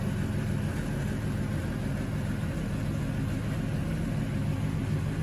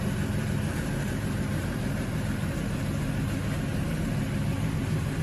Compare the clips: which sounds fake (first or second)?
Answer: second